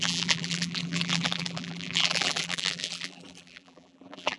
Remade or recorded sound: remade